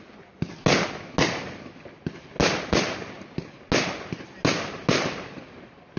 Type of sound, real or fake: real